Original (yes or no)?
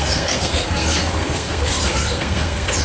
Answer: no